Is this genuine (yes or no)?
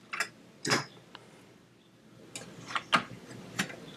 yes